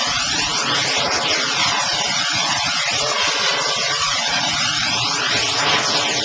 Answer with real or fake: real